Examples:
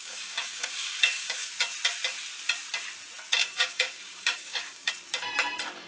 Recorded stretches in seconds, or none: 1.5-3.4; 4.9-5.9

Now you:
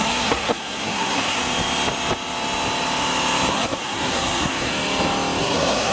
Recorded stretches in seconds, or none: 1.4-3.5; 4.7-5.4

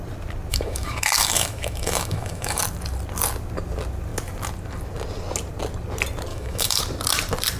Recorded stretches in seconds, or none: 0.0-0.5; 2.6-6.3; 6.8-7.6

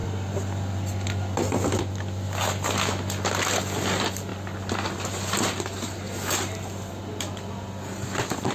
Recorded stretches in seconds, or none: 0.0-8.5

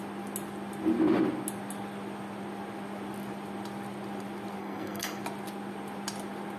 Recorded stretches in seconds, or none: 0.0-4.6; 5.2-6.6

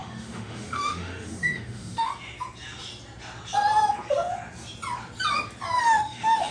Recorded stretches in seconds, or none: 2.1-5.8

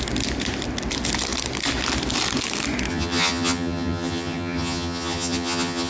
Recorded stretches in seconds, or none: 0.0-2.9